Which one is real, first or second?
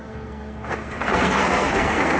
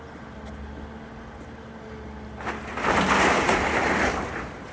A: second